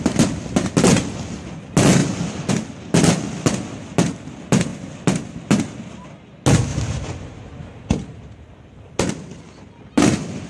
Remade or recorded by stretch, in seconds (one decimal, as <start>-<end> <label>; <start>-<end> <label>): 0.0-10.5 recorded